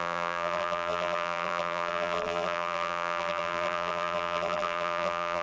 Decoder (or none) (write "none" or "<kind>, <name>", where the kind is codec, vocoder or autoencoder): vocoder, BigVGAN v2